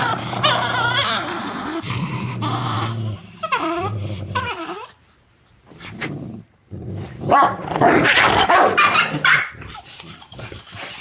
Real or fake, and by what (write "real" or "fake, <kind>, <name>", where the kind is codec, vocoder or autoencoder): fake, vocoder, BigVGAN v2